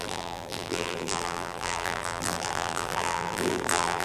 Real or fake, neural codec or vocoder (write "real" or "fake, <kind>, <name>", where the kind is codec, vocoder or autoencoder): fake, vocoder, BigVGAN v2